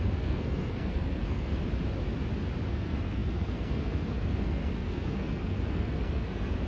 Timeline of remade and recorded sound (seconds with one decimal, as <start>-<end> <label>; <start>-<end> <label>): 0.0-1.6 remade; 1.6-2.7 recorded; 2.7-6.7 remade